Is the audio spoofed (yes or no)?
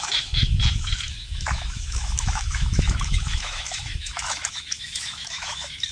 yes